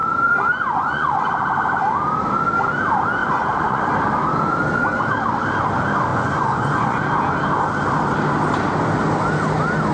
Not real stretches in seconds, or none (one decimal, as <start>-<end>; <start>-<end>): 0.0-1.3; 3.2-3.9; 6.1-7.0